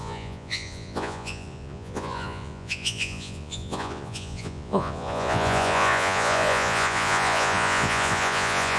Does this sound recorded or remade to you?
remade